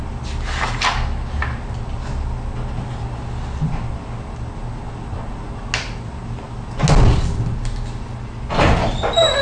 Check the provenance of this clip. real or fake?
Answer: real